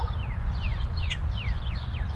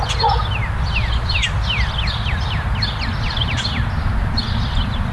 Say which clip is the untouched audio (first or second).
second